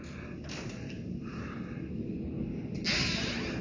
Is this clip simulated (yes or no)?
no